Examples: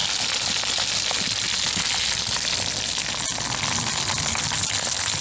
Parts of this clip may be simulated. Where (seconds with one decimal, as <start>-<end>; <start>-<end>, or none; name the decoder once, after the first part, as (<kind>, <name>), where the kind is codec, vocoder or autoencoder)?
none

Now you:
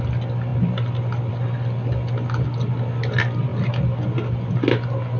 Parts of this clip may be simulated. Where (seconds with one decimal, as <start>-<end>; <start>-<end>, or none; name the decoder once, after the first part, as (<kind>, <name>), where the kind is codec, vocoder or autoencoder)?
none

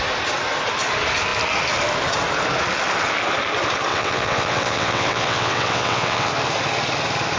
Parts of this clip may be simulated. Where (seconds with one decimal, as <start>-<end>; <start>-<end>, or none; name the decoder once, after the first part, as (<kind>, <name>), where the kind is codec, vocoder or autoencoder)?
3.9-6.3 (vocoder, WaveNeXt)